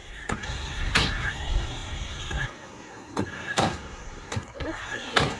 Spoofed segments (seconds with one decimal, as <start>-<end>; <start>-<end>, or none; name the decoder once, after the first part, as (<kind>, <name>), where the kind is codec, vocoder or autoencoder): 0.0-5.4 (codec, SNAC)